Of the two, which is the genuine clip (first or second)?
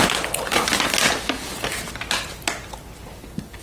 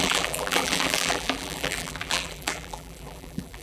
first